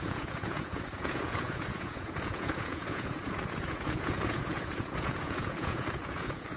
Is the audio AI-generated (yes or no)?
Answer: yes